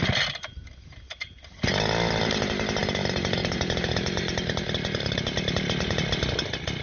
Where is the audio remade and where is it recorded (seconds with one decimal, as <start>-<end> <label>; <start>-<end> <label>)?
0.0-2.8 recorded; 2.8-6.2 remade; 6.2-6.8 recorded